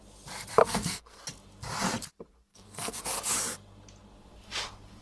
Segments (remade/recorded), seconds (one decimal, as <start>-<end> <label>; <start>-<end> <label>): 0.0-0.6 recorded; 0.6-1.2 remade; 1.2-2.5 recorded; 2.5-3.0 remade; 3.0-5.0 recorded